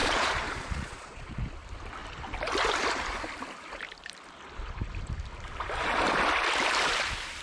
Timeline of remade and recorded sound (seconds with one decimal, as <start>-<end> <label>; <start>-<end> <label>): 0.0-1.4 remade; 1.4-7.4 recorded